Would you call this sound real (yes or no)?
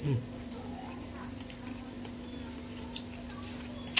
yes